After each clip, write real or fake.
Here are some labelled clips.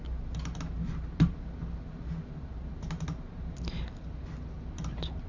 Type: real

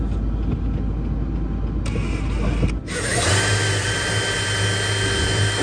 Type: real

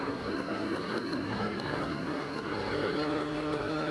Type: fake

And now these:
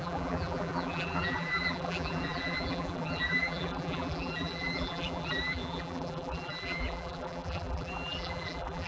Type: fake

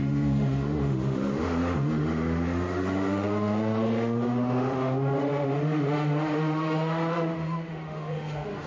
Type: fake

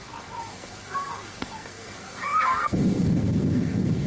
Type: fake